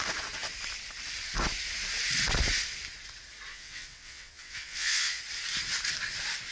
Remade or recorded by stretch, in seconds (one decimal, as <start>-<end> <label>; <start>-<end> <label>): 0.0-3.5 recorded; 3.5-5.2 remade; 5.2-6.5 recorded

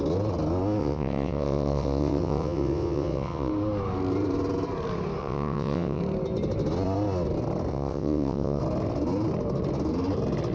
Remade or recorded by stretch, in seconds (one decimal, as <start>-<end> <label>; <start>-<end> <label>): 0.0-0.8 recorded; 0.8-3.5 remade; 3.5-5.2 recorded; 5.2-6.0 remade; 6.0-7.7 recorded; 7.7-8.6 remade; 8.6-10.5 recorded

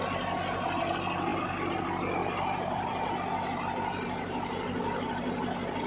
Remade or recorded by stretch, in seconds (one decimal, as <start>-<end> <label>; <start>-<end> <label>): 0.0-1.3 recorded; 1.3-1.8 remade; 1.8-2.2 recorded; 2.2-3.1 remade; 3.1-5.9 recorded

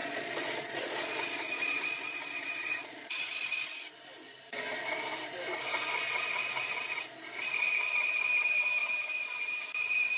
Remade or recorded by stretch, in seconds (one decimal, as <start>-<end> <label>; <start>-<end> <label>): 0.0-3.6 remade; 3.6-10.2 recorded

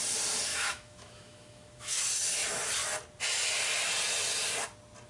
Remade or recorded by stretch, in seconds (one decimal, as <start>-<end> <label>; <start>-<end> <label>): 0.0-0.5 recorded; 0.5-2.0 remade; 2.0-5.1 recorded